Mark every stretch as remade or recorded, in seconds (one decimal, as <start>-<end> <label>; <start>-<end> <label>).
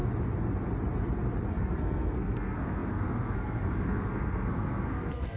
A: 0.0-1.5 recorded; 1.5-5.4 remade